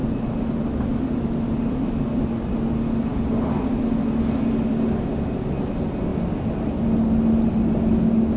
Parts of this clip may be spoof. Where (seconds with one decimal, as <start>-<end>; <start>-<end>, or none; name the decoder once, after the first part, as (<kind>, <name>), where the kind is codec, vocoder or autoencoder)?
none